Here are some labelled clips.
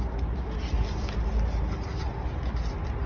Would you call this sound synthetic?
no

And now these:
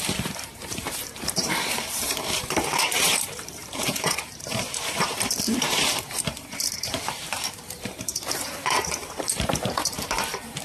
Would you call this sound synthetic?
yes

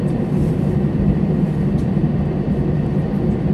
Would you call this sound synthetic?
yes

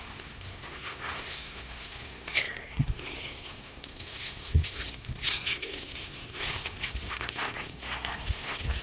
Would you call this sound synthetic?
yes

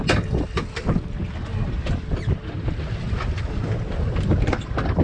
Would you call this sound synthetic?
no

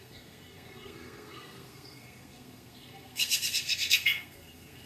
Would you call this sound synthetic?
yes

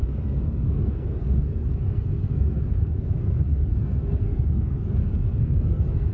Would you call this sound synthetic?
yes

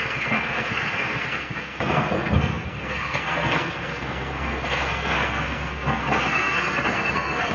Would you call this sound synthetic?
yes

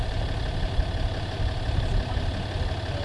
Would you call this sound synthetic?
no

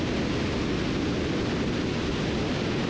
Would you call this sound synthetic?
no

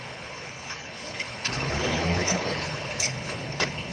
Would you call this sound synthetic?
yes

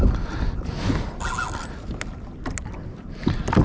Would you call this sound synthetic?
no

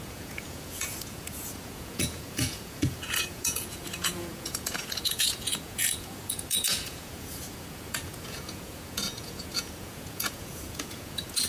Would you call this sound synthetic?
yes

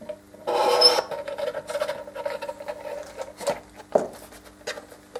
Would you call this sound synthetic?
no